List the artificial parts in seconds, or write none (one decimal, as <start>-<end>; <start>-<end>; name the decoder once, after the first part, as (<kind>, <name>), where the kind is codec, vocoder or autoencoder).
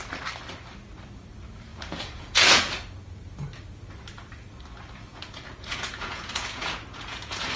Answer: 1.7-2.7 (vocoder, Vocos); 5.1-7.6